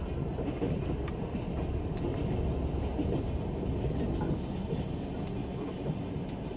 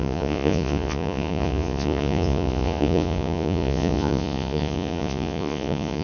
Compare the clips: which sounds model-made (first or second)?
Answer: second